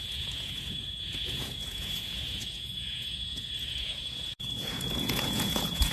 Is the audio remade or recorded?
remade